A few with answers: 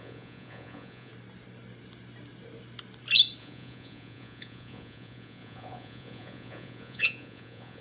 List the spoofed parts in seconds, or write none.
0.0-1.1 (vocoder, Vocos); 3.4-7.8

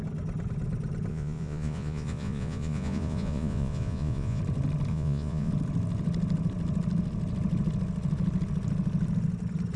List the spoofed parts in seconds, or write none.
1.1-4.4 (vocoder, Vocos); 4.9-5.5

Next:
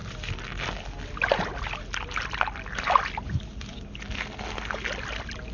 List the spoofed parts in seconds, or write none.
none

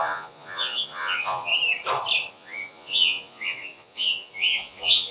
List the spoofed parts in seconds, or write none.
0.0-1.5 (vocoder, Vocos); 2.3-5.1

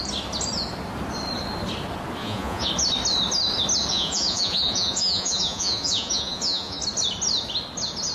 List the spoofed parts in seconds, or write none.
2.2-2.7 (vocoder, Vocos); 3.9-6.8

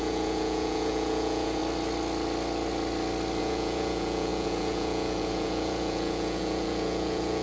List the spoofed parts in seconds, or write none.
0.0-1.6 (vocoder, Vocos); 3.4-7.4